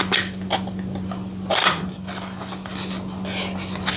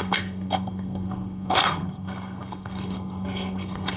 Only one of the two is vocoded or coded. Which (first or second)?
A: second